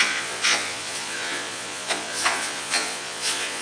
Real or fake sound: fake